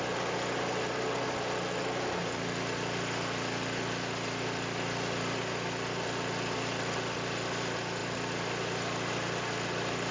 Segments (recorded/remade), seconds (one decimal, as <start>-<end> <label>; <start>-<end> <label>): 0.0-10.1 recorded